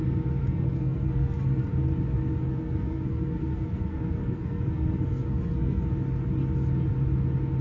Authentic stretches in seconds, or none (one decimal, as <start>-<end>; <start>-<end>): 0.0-0.4; 1.7-2.4; 5.8-7.6